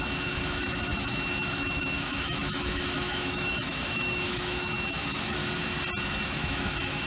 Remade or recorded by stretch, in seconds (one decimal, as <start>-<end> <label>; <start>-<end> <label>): 0.0-5.4 remade; 5.4-6.2 recorded; 6.2-7.1 remade